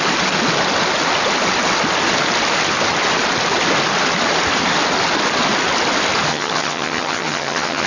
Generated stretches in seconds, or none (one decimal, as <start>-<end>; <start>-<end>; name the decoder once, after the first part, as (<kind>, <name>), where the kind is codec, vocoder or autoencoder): 6.3-7.9 (vocoder, HiFi-GAN)

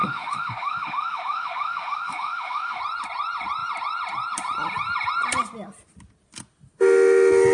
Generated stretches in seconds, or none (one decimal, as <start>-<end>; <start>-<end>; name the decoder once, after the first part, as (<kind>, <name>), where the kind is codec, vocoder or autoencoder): 0.0-2.8 (autoencoder, DAC-VAE)

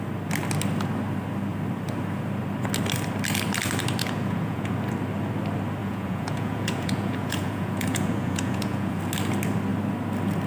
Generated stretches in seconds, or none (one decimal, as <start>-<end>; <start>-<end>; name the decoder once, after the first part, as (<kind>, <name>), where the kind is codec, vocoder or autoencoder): 4.0-4.7 (vocoder, Vocos); 5.8-9.0

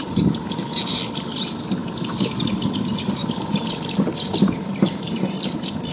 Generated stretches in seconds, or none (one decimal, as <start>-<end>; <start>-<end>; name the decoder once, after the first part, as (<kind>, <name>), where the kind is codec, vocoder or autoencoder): 0.0-0.7 (vocoder, BigVGAN v2); 1.4-1.8; 2.8-5.9

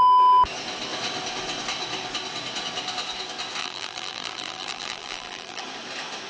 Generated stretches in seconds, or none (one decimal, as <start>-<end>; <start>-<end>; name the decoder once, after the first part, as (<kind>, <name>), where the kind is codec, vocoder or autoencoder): 3.6-5.6 (vocoder, BigVGAN v2)

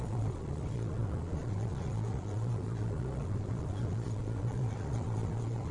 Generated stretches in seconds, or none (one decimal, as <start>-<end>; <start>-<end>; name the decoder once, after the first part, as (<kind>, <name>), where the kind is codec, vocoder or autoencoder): 0.0-5.7 (vocoder, Vocos)

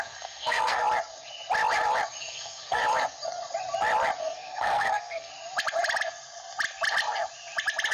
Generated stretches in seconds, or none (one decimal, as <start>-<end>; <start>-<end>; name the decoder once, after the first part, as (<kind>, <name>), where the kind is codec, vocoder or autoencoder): 0.0-0.8 (codec, SNAC); 2.2-2.8; 4.2-5.3